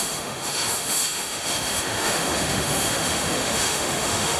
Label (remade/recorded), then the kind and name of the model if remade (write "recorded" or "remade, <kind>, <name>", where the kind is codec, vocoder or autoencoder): remade, autoencoder, DAC-VAE